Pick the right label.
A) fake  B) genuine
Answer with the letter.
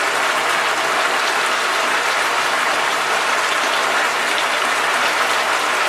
B